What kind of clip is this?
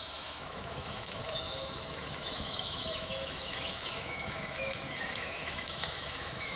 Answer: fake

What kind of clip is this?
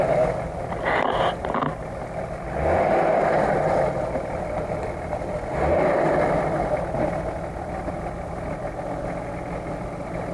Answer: real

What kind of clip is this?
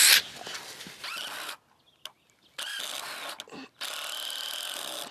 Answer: real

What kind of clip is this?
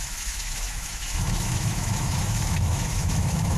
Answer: fake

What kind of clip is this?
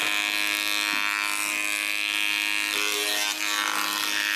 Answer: real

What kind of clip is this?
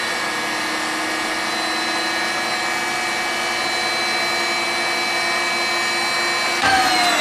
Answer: real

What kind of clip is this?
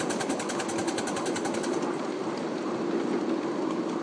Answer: real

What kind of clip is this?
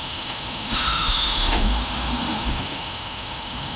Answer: fake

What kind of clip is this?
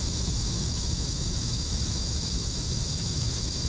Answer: fake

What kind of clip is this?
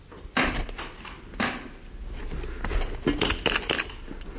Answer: real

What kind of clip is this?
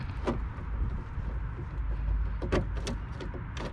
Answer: real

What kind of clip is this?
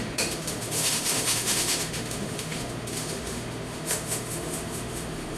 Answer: fake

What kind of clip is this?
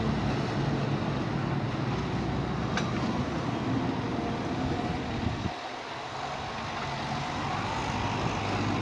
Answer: real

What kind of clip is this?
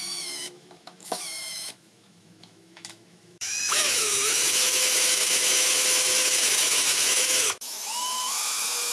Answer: fake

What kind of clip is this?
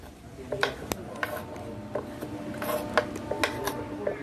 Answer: real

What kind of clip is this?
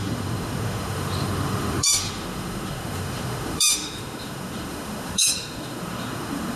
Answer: fake